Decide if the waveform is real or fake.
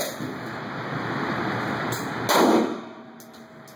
real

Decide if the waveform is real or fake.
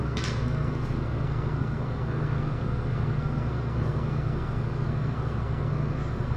fake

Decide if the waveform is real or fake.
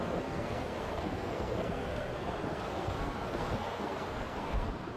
fake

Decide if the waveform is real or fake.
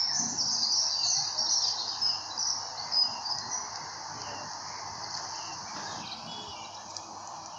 real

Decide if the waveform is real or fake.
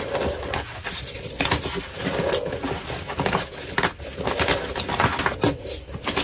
real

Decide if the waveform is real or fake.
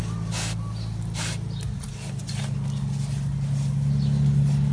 real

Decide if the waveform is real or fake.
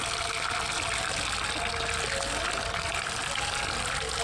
real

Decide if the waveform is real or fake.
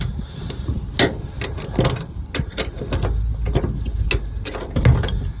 real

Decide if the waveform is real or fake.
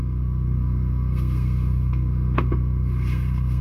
fake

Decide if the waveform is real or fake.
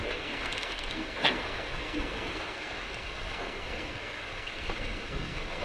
fake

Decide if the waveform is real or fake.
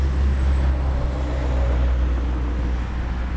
real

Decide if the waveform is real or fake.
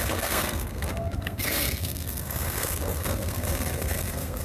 fake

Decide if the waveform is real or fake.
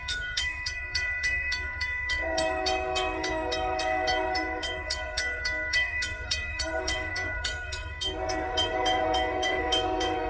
fake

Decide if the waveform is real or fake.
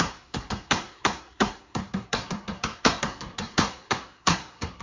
fake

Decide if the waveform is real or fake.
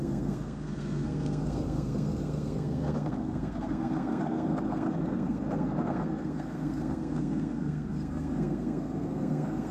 fake